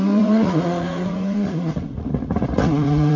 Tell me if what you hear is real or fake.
fake